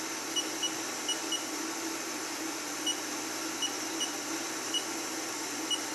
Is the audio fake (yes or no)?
no